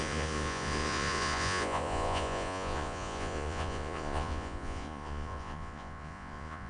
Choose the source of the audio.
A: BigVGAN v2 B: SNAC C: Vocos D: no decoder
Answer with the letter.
C